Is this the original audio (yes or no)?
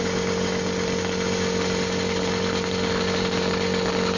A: yes